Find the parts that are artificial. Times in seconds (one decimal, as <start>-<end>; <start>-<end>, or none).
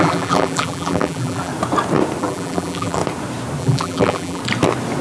0.0-1.5; 2.2-3.0; 3.6-4.4